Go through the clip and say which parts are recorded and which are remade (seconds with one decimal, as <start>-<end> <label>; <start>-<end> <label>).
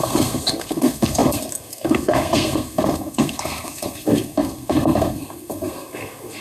0.0-6.4 remade